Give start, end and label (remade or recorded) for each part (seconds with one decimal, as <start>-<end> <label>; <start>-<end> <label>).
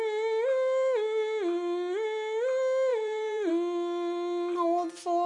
0.0-2.9 recorded; 2.9-3.5 remade; 3.5-5.3 recorded